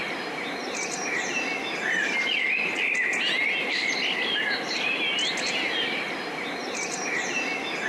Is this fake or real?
real